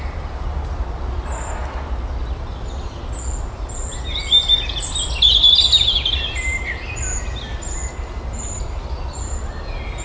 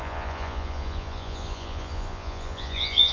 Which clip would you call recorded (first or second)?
first